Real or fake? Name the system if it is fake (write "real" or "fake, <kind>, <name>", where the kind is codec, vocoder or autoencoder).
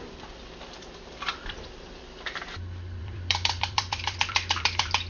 fake, vocoder, BigVGAN v2